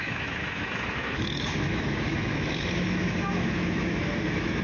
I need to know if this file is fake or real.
fake